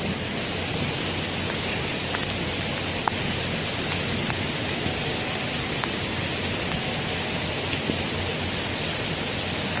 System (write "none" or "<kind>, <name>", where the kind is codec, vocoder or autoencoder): none